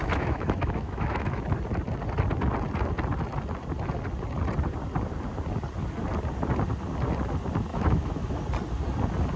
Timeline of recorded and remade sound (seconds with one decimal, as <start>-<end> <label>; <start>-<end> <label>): 0.0-1.4 remade; 1.4-7.7 recorded; 7.7-8.4 remade; 8.4-9.4 recorded

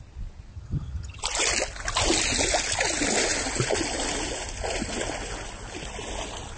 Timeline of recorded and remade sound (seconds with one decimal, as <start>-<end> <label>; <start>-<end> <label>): 0.0-0.5 recorded; 0.5-1.2 remade; 1.2-6.6 recorded

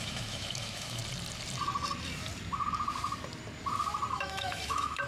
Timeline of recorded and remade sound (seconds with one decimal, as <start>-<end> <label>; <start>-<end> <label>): 0.0-1.0 remade; 1.0-4.1 recorded; 4.1-5.1 remade

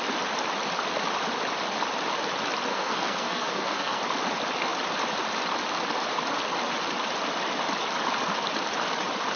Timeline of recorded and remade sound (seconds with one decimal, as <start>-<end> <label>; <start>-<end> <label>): 0.0-2.7 recorded; 2.7-4.0 remade; 4.0-9.4 recorded

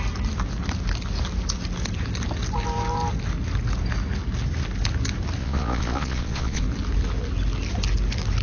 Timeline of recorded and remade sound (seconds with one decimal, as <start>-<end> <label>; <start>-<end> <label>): 0.0-5.4 recorded; 5.4-6.6 remade; 6.6-8.4 recorded

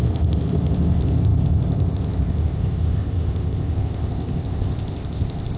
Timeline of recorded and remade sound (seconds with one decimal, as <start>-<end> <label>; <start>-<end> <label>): 0.0-5.6 remade

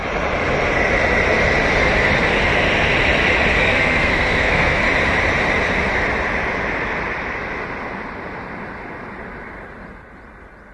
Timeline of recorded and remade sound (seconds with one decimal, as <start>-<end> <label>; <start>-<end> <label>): 0.0-3.6 recorded; 3.6-4.8 remade; 4.8-10.7 recorded